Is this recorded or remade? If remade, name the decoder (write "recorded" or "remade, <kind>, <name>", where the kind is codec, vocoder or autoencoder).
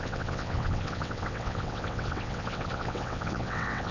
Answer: remade, vocoder, WaveNeXt